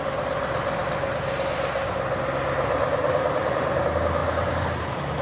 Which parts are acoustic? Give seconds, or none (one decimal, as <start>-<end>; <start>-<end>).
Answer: 0.0-4.2